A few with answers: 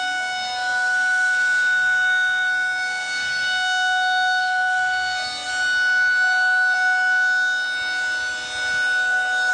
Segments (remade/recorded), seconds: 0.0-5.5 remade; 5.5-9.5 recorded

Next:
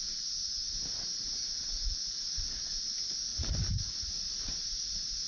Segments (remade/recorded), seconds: 0.0-3.3 recorded; 3.3-5.3 remade

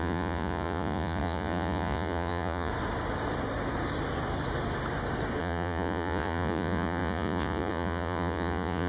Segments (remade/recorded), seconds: 0.0-2.7 remade; 2.7-5.4 recorded; 5.4-8.9 remade

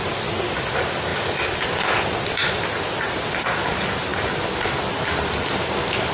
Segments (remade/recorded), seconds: 0.0-6.1 recorded

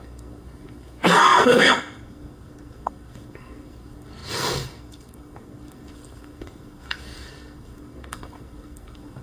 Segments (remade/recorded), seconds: 0.0-9.2 remade

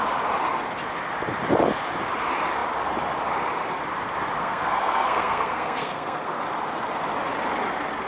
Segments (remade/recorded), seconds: 0.0-4.4 recorded; 4.4-6.4 remade; 6.4-8.1 recorded

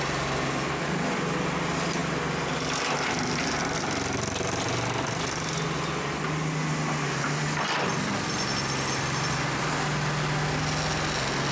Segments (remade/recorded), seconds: 0.0-11.5 recorded